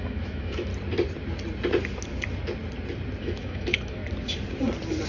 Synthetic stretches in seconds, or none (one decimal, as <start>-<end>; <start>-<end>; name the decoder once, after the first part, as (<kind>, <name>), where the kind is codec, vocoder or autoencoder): 0.0-0.7 (autoencoder, DAC-VAE); 3.2-4.0